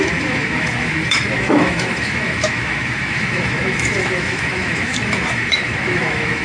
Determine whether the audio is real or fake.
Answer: fake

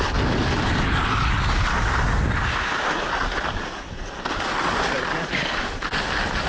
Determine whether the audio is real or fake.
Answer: real